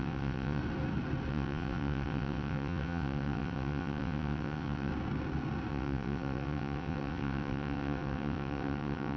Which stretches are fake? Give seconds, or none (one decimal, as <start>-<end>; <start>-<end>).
0.0-0.6; 1.3-4.9; 5.7-9.2